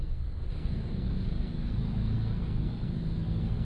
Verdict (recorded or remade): remade